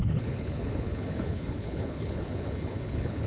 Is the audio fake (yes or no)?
yes